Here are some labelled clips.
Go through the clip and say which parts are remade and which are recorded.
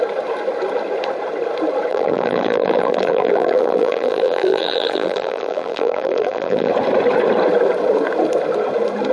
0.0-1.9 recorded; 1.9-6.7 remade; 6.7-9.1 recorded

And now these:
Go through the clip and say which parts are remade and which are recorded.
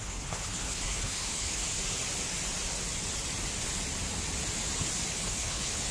0.0-1.6 remade; 1.6-5.1 recorded; 5.1-5.9 remade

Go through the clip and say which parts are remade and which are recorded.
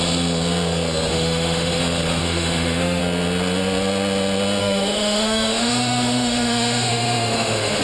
0.0-1.1 recorded; 1.1-1.8 remade; 1.8-2.2 recorded; 2.2-3.0 remade; 3.0-4.6 recorded; 4.6-7.8 remade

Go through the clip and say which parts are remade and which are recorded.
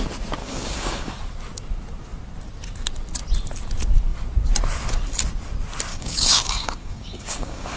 0.0-0.4 recorded; 0.4-1.2 remade; 1.2-5.9 recorded; 5.9-7.8 remade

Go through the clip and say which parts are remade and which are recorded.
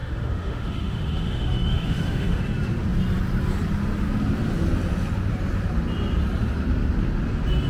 0.0-2.4 remade; 2.4-7.7 recorded